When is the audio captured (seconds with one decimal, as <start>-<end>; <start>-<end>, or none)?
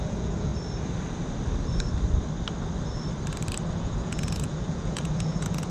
0.5-3.7